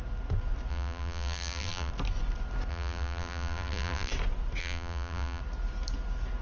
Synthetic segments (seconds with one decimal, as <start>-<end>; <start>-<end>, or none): 0.7-1.9; 2.7-4.1; 4.6-5.4

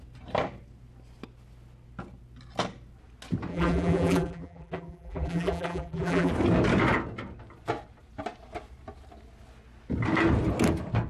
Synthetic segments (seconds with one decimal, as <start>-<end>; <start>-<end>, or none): 3.5-6.3

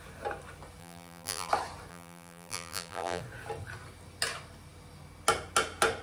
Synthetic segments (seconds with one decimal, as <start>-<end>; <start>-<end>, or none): 0.8-1.5; 1.9-3.2

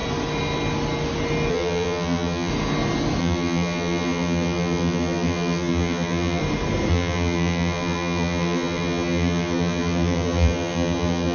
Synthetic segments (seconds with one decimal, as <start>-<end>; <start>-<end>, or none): 1.5-2.5; 3.2-6.4; 6.9-11.3

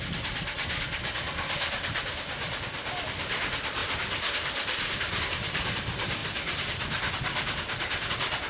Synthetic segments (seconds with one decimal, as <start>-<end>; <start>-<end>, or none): 0.0-6.2; 8.1-8.5

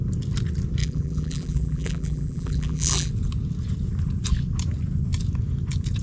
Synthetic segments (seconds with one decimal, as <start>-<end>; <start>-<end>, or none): 0.8-3.1

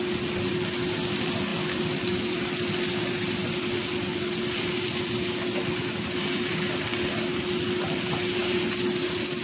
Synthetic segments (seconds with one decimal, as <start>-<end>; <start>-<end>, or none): none